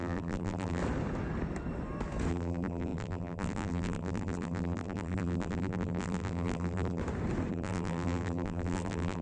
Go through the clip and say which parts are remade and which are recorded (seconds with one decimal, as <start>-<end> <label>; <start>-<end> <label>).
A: 0.0-0.8 remade; 0.8-2.3 recorded; 2.3-7.0 remade; 7.0-7.5 recorded; 7.5-9.2 remade